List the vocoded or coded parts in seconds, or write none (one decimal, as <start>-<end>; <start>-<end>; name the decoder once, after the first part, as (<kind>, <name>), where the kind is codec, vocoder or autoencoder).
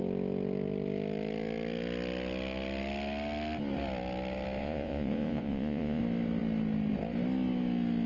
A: 4.6-6.0 (vocoder, Vocos)